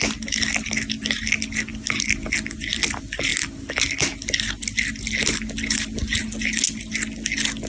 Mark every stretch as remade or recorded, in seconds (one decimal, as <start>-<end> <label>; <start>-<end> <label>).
0.0-7.7 recorded